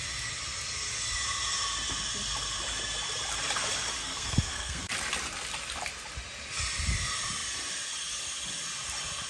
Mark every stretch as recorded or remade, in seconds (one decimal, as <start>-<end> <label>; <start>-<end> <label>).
0.0-4.0 recorded; 4.0-4.9 remade; 4.9-9.3 recorded